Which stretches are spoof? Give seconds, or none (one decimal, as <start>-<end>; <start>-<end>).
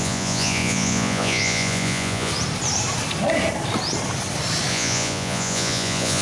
0.0-2.3; 4.7-6.2